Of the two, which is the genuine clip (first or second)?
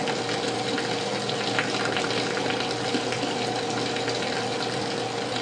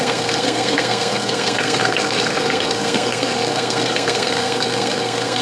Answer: first